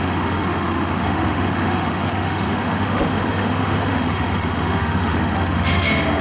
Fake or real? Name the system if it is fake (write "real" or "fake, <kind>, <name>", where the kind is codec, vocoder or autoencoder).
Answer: fake, autoencoder, DAC-VAE